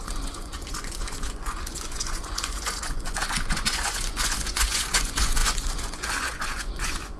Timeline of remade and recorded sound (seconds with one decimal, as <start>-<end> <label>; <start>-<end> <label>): 0.0-7.2 remade